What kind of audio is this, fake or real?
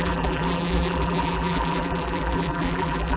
fake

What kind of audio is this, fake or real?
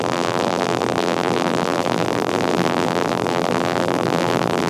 fake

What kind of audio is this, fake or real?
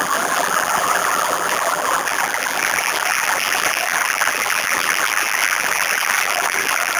fake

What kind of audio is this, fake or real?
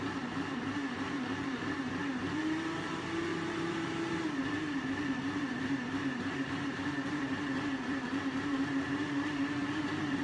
fake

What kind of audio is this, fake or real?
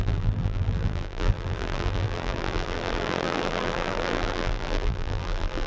fake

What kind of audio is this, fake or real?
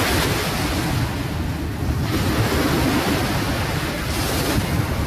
real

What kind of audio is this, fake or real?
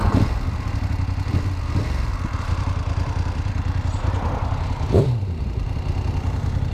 fake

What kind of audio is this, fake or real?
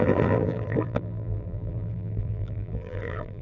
fake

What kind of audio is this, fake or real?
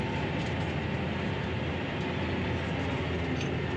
real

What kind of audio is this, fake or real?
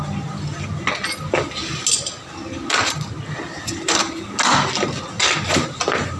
real